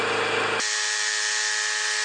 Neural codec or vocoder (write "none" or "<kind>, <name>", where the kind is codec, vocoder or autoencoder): none